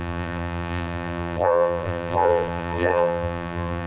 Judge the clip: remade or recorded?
remade